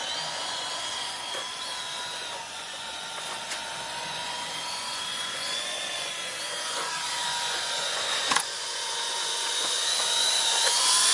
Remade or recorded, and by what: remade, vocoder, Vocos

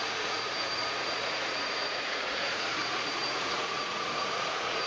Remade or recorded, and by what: remade, vocoder, Vocos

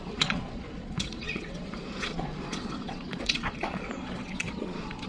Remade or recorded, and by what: remade, vocoder, Vocos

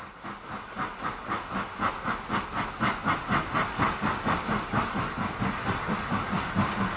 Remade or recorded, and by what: recorded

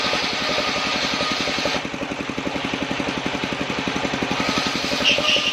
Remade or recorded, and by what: recorded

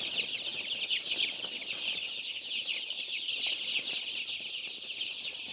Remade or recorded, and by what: recorded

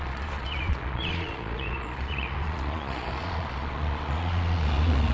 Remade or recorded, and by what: remade, vocoder, Vocos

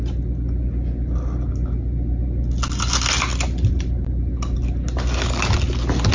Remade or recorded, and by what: recorded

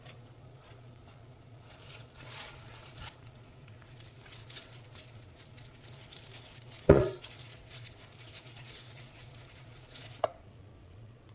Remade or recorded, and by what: remade, vocoder, Vocos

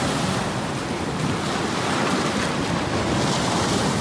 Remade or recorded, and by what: recorded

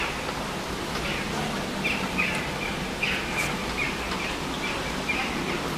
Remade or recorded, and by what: recorded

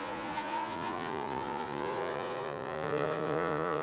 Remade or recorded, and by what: remade, vocoder, Vocos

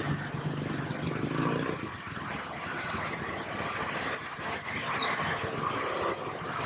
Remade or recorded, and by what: recorded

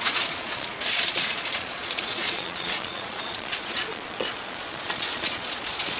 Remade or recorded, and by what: remade, vocoder, Vocos